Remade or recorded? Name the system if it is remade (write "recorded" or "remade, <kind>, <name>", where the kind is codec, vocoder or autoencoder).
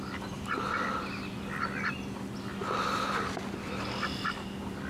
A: recorded